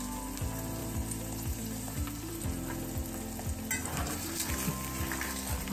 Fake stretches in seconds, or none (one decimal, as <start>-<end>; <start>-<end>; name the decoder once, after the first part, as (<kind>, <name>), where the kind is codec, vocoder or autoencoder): 0.8-2.4 (vocoder, BigVGAN v2); 3.8-4.5